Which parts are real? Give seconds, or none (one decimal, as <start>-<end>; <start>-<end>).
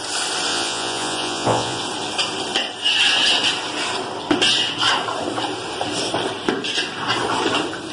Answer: 0.0-0.5; 1.8-7.9